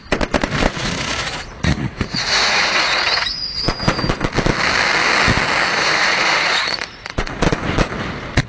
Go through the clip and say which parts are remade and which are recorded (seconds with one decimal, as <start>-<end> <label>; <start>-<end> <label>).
0.0-0.8 recorded; 0.8-3.0 remade; 3.0-5.7 recorded; 5.7-7.4 remade; 7.4-8.5 recorded

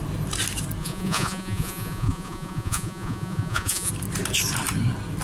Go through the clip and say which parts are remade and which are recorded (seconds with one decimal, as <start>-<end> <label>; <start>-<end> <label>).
0.0-0.8 recorded; 0.8-3.9 remade; 3.9-5.2 recorded

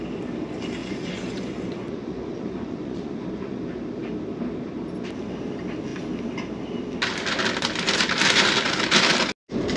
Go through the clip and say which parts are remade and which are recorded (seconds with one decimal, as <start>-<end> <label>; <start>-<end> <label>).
0.0-0.8 recorded; 0.8-3.6 remade; 3.6-9.8 recorded

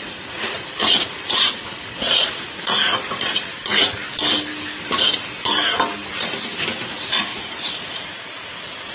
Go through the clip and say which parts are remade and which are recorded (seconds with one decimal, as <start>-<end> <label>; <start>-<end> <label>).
0.0-3.5 remade; 3.5-6.8 recorded; 6.8-8.9 remade

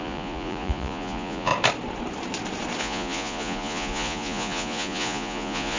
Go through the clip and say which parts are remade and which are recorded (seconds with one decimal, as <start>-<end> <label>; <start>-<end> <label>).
0.0-1.5 remade; 1.5-2.8 recorded; 2.8-5.8 remade